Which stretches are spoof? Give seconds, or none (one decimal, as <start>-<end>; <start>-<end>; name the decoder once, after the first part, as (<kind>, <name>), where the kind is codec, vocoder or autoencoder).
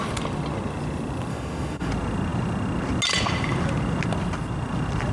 1.3-1.9 (autoencoder, DAC-VAE)